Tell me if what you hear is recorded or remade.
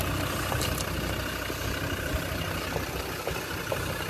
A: recorded